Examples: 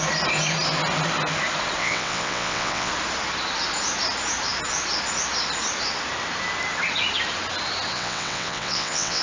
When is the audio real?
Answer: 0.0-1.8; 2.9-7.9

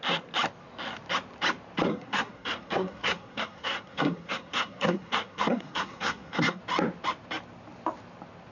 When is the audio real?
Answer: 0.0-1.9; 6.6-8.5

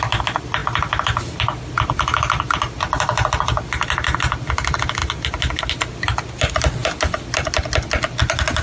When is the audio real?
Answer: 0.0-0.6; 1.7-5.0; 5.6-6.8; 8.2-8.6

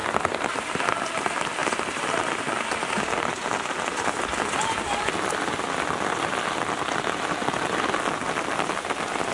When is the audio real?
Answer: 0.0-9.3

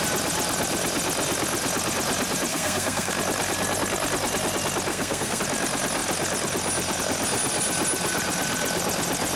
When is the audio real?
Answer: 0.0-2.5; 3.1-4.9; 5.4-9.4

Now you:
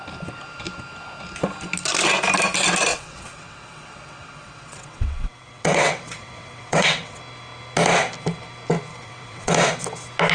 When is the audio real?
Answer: 0.0-2.9; 7.2-8.9; 9.5-10.3

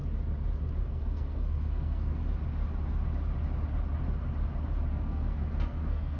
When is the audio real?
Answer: 0.0-0.8; 2.2-4.9